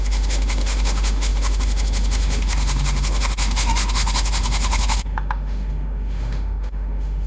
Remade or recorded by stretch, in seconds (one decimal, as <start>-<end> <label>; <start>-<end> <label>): 0.0-7.3 remade